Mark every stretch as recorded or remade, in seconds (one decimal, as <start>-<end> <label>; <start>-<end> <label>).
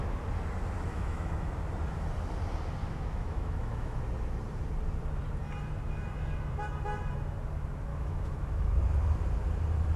0.0-0.9 recorded; 0.9-1.5 remade; 1.5-2.8 recorded; 2.8-4.0 remade; 4.0-7.9 recorded; 7.9-8.7 remade; 8.7-10.0 recorded